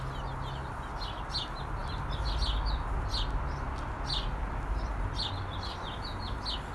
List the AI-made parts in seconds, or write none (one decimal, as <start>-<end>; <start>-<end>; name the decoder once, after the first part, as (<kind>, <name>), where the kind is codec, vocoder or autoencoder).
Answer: none